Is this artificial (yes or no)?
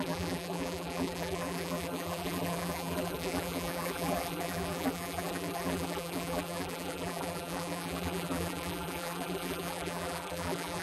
yes